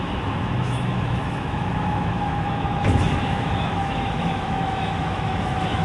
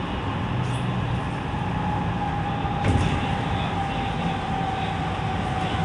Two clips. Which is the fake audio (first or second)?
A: first